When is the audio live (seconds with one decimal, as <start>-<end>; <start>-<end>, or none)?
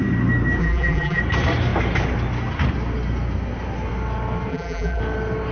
0.0-0.6; 1.2-4.5; 5.0-5.5